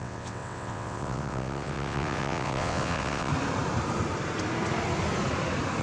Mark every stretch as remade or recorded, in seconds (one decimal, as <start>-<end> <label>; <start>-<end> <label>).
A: 0.0-3.3 remade; 3.3-5.8 recorded